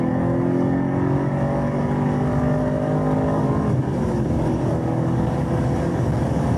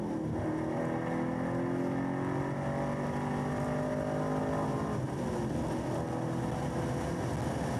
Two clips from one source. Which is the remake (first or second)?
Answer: first